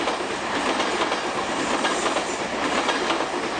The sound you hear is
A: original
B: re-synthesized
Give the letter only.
A